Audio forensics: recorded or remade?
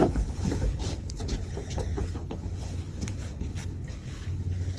remade